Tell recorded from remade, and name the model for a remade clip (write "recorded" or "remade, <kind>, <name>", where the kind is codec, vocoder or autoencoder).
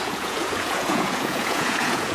remade, vocoder, Vocos